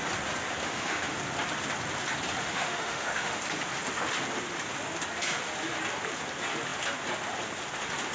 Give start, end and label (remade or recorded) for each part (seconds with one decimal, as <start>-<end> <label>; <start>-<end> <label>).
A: 0.0-0.6 recorded; 0.6-1.2 remade; 1.2-2.4 recorded; 2.4-3.4 remade; 3.4-8.1 recorded